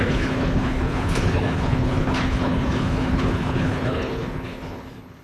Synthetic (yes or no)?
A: yes